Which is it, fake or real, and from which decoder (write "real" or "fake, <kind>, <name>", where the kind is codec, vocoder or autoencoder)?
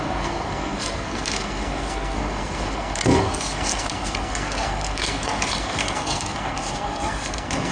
fake, codec, SNAC